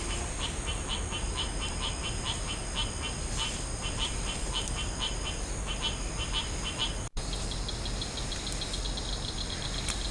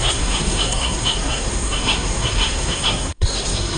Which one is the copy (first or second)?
second